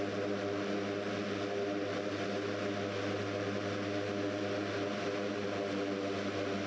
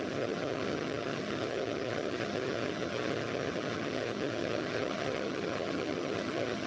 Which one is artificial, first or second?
second